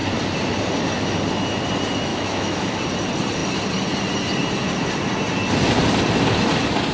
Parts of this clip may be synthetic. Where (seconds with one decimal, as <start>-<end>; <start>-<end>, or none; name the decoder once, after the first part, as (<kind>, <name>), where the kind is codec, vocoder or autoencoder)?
2.1-2.8 (autoencoder, DAC-VAE)